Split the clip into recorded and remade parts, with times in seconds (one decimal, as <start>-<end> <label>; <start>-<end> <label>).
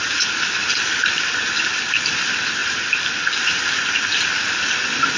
0.0-5.2 recorded